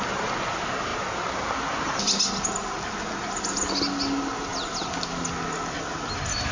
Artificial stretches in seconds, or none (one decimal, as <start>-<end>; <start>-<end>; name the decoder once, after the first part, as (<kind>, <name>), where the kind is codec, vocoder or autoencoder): none